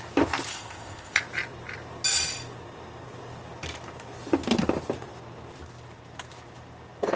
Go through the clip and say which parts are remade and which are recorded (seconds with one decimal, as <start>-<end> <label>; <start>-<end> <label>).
0.0-0.5 recorded; 0.5-1.2 remade; 1.2-7.2 recorded